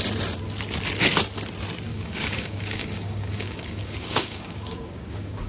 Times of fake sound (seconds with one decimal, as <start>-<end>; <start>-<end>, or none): 1.9-5.5